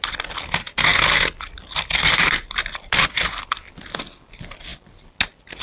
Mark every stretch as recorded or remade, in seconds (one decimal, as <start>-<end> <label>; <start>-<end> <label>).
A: 0.0-5.6 recorded